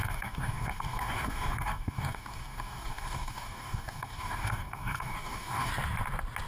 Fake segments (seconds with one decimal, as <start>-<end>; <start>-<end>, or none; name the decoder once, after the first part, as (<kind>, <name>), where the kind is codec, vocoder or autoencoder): 0.0-5.7 (codec, DAC)